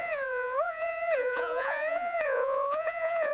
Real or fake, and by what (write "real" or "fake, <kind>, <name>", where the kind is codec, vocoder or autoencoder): fake, vocoder, Vocos